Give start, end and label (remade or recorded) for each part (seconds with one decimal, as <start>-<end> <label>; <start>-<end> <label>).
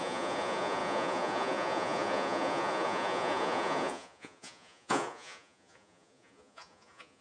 0.0-7.2 remade